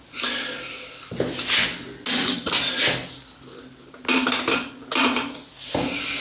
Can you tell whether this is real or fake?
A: real